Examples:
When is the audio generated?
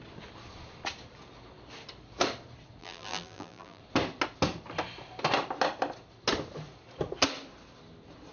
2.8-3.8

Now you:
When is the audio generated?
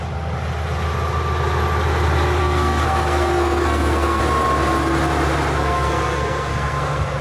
2.4-4.2; 5.6-7.2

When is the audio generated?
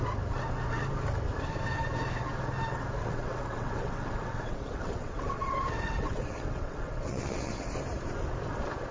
3.0-7.7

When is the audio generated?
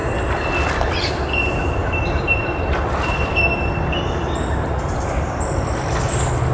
1.1-6.5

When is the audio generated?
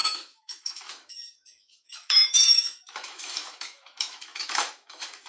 0.0-5.3